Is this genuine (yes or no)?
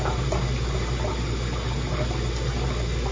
yes